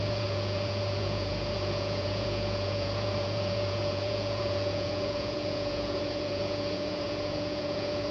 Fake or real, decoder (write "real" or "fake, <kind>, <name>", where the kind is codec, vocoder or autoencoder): fake, vocoder, Vocos